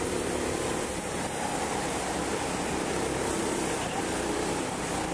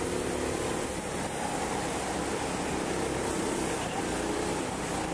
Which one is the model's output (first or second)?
first